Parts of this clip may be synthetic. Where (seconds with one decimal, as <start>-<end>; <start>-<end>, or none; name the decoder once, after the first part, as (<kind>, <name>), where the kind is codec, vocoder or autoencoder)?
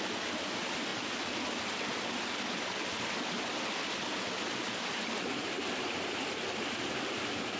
none